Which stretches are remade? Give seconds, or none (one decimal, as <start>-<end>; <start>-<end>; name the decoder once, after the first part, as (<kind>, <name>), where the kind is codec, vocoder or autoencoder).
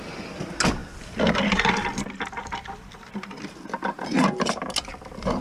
none